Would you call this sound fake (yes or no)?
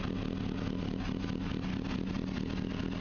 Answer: no